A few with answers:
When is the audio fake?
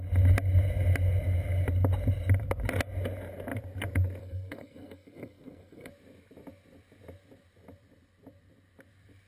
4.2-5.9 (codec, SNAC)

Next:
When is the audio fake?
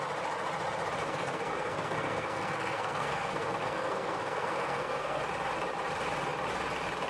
1.0-5.2 (codec, SNAC)